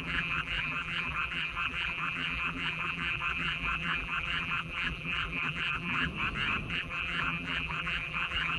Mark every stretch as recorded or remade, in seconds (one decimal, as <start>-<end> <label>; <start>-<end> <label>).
0.0-6.1 remade; 6.1-6.7 recorded; 6.7-8.6 remade